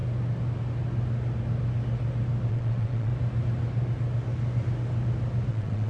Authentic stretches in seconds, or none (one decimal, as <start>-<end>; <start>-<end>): 0.0-2.5; 3.1-5.5